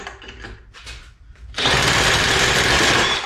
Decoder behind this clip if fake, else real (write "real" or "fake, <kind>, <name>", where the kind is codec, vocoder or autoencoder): real